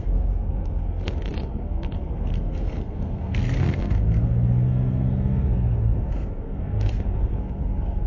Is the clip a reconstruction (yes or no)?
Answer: yes